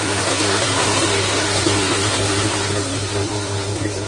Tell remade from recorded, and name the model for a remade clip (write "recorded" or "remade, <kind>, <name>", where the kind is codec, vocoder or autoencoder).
remade, codec, SNAC